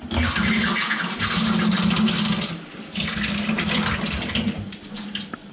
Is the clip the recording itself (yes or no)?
yes